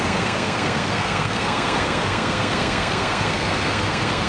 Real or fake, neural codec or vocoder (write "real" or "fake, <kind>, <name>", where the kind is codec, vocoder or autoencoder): fake, codec, SNAC